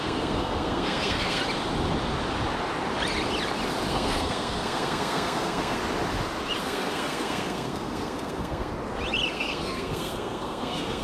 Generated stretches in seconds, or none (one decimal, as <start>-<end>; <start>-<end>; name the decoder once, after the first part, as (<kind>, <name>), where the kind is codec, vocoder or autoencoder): 0.0-1.4 (codec, SNAC); 3.9-5.8; 6.6-8.7; 9.3-11.0